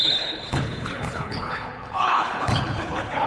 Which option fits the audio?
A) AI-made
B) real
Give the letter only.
A